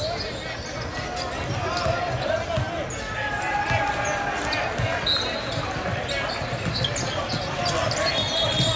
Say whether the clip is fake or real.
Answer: real